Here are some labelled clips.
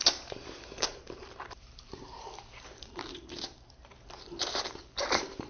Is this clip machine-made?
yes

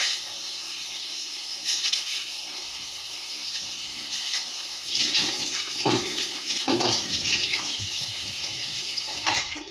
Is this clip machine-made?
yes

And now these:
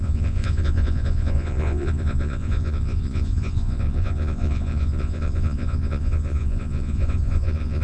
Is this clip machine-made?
yes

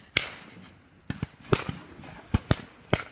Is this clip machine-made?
no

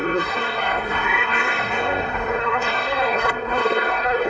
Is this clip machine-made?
yes